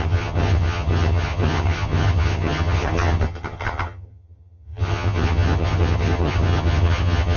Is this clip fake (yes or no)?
yes